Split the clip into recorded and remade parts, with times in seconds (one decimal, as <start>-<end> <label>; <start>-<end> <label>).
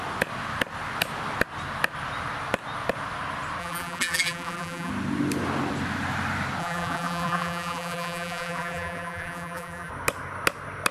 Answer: 0.0-3.6 recorded; 3.6-4.9 remade; 4.9-6.6 recorded; 6.6-9.9 remade; 9.9-10.9 recorded